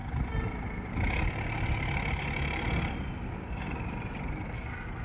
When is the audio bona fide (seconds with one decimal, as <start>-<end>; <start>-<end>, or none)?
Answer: 0.0-5.0